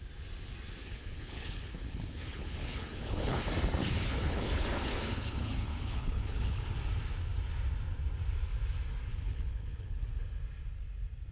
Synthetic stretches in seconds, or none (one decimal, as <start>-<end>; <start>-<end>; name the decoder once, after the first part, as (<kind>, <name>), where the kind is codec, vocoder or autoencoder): 0.8-3.4 (codec, HILCodec); 3.8-6.8; 9.1-10.2

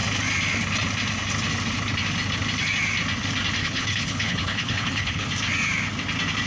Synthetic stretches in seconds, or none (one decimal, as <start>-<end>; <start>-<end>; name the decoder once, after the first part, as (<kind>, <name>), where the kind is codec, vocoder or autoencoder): 3.6-5.3 (codec, HILCodec)

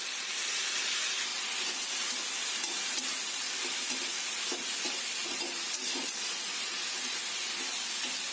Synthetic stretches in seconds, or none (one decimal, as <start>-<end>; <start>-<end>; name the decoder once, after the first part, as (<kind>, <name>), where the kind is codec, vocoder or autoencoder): none

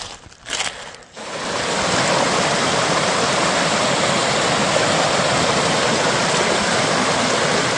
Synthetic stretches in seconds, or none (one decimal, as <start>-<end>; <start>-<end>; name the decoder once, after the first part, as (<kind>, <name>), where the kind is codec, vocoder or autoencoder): none

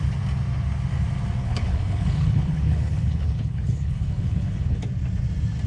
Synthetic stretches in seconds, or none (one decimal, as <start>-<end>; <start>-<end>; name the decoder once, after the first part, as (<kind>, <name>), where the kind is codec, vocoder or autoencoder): 1.4-4.8 (codec, HILCodec)

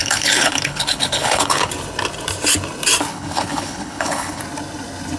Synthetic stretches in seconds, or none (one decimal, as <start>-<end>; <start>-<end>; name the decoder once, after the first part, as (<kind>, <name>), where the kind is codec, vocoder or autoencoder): 0.0-1.7 (codec, HILCodec); 3.1-4.4

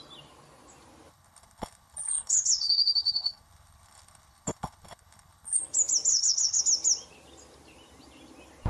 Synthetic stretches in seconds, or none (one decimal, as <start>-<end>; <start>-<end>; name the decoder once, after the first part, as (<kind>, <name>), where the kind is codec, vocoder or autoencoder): 1.1-5.6 (codec, HILCodec); 6.1-6.6

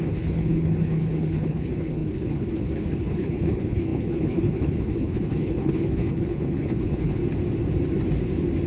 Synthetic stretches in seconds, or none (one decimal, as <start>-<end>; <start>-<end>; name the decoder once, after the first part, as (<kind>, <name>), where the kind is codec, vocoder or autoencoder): 0.0-7.2 (codec, HILCodec)